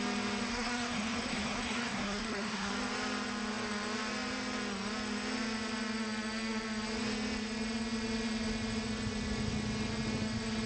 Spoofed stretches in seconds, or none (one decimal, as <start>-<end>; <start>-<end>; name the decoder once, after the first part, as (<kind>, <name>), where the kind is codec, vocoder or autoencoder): 0.5-2.7 (codec, SNAC)